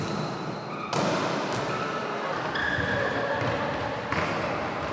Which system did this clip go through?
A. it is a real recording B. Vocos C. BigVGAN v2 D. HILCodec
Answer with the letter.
A